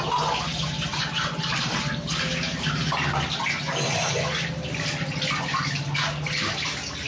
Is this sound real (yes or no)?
yes